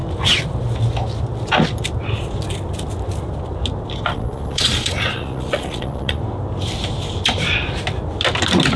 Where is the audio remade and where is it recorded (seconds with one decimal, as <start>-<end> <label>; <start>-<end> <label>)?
0.0-4.1 recorded; 4.1-6.2 remade; 6.2-8.8 recorded